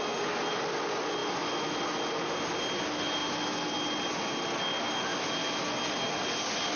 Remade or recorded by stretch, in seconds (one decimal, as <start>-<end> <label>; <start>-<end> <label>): 0.0-6.8 recorded